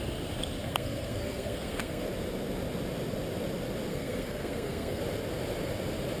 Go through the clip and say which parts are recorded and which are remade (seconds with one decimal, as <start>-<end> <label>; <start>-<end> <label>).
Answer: 0.0-0.6 recorded; 0.6-2.0 remade; 2.0-3.9 recorded; 3.9-5.0 remade; 5.0-6.2 recorded